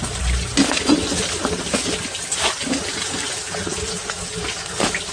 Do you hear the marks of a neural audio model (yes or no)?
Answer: no